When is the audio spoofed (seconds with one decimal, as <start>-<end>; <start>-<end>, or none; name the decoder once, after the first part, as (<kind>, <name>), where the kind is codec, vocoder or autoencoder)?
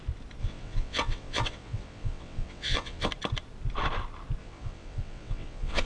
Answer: 0.4-3.1 (vocoder, WaveNeXt); 4.4-5.9